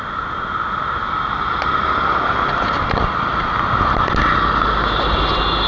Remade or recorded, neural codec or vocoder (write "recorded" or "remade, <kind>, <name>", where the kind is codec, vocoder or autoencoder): recorded